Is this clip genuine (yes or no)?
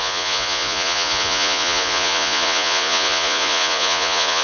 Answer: no